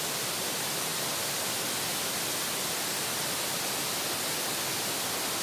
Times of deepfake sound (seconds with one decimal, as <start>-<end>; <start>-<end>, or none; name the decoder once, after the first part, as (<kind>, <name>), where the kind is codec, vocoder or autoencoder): none